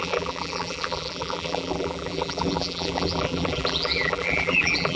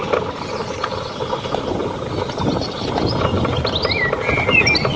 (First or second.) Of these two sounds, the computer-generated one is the first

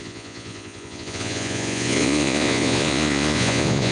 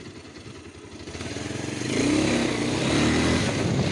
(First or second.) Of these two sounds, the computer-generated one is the first